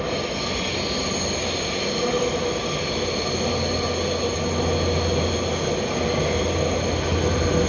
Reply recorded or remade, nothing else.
recorded